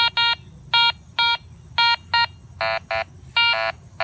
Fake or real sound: real